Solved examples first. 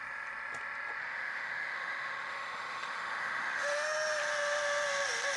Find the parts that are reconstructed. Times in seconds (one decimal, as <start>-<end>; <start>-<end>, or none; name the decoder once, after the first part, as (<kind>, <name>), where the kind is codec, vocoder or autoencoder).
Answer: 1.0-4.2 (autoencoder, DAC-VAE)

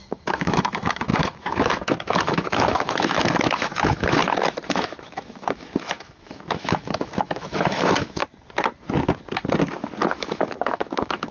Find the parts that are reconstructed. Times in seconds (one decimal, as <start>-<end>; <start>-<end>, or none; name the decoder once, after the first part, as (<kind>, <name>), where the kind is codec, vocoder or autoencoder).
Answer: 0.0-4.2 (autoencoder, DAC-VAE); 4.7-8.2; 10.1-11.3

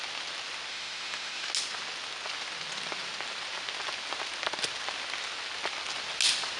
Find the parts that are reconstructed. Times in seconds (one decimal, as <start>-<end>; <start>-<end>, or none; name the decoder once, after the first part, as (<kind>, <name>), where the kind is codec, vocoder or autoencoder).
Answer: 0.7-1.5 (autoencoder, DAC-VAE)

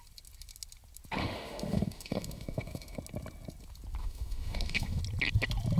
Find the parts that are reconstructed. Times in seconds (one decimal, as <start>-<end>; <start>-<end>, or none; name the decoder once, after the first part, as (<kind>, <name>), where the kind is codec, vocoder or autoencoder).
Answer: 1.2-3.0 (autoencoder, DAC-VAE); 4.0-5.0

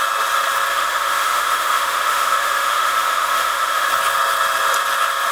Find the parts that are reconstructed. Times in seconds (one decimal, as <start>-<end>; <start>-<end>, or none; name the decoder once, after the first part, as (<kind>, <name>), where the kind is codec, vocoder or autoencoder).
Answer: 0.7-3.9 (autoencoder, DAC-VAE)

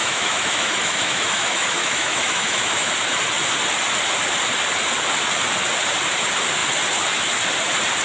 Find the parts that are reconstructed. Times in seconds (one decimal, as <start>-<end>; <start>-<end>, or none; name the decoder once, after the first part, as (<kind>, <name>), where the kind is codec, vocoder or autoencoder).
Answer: 0.0-2.9 (autoencoder, DAC-VAE)